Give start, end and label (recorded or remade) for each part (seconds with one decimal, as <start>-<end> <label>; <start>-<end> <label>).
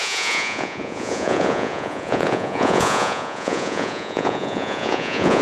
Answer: 0.0-5.4 remade